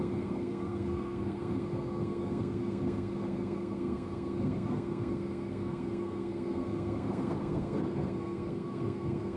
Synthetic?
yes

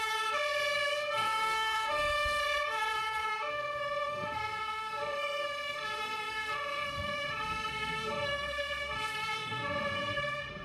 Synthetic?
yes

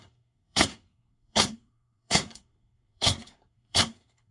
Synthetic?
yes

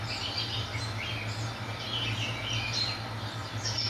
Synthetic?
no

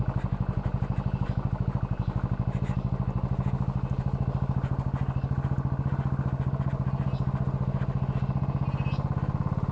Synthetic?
no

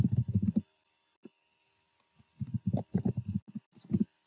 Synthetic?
no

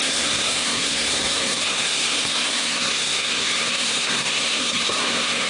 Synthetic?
yes